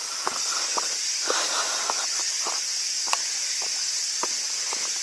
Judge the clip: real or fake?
real